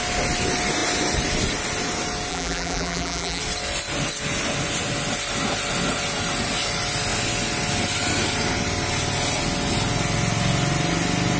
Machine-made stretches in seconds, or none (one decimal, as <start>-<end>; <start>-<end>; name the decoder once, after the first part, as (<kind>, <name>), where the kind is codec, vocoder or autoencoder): 2.3-3.4 (vocoder, BigVGAN v2)